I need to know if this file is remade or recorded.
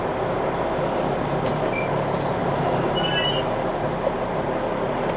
recorded